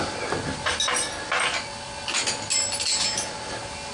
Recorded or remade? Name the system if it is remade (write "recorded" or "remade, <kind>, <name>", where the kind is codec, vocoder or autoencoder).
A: recorded